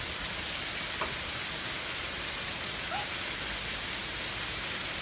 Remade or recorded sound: recorded